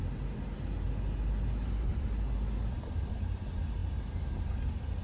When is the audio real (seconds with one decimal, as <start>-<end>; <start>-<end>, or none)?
0.0-5.0